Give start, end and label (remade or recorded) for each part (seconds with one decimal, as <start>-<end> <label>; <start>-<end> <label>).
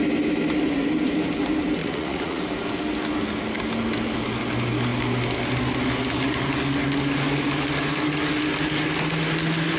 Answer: 0.0-1.8 recorded; 1.8-2.4 remade; 2.4-9.8 recorded